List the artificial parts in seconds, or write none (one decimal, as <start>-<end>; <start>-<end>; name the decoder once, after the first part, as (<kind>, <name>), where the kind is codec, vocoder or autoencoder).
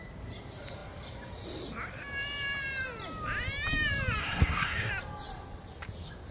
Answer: 4.2-4.9 (codec, SNAC)